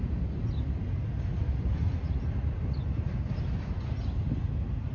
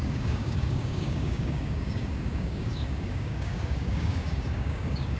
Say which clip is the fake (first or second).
second